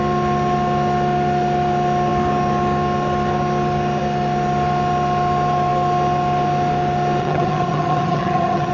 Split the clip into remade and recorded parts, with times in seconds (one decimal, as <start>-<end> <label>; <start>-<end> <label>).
0.0-7.2 recorded; 7.2-8.7 remade